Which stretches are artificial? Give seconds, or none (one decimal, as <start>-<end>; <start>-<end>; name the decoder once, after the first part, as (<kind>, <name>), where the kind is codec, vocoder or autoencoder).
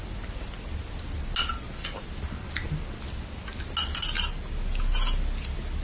none